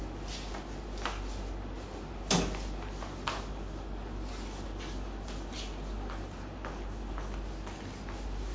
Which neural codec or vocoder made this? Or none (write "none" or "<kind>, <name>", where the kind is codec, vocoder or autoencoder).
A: none